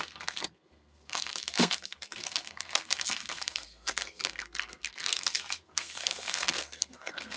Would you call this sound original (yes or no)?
no